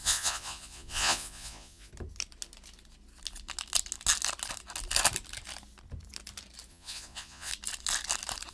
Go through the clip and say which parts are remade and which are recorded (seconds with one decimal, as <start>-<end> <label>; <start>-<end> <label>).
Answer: 0.0-1.9 remade; 1.9-6.7 recorded; 6.7-7.5 remade; 7.5-8.5 recorded

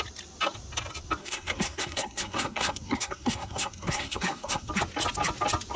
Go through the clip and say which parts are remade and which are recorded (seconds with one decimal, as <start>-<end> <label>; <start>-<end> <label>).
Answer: 0.0-1.2 recorded; 1.2-4.7 remade; 4.7-5.8 recorded